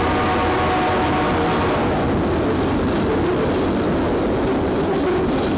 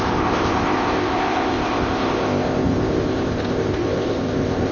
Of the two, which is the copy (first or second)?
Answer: second